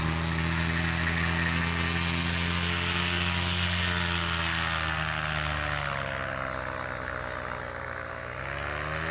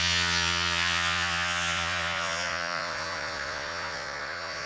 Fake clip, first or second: second